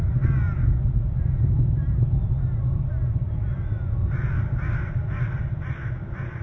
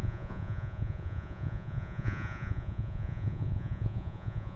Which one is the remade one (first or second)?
second